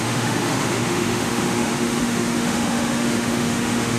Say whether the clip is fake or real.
fake